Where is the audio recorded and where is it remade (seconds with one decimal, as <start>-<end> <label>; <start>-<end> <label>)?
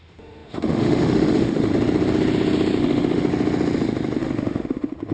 0.0-1.7 remade; 1.7-2.8 recorded; 2.8-3.3 remade; 3.3-4.2 recorded; 4.2-5.1 remade